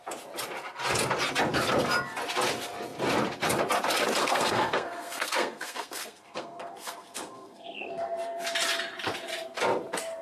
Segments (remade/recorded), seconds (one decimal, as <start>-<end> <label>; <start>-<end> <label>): 0.0-4.2 recorded; 4.2-8.4 remade; 8.4-10.2 recorded